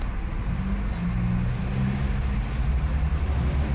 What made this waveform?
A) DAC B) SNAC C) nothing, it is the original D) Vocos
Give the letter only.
C